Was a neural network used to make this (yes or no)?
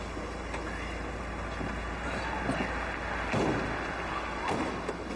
no